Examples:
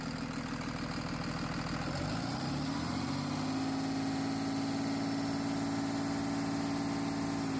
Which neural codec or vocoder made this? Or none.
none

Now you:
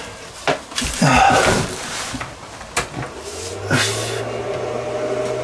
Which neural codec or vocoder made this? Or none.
none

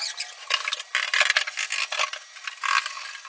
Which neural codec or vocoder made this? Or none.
none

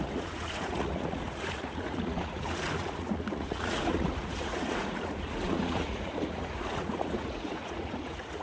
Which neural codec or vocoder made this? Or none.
vocoder, Vocos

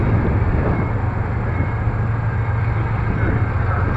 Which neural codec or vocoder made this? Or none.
none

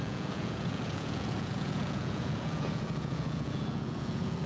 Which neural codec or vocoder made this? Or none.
vocoder, Vocos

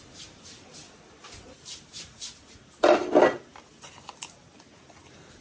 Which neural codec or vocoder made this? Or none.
none